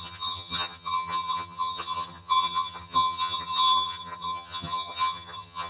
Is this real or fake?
fake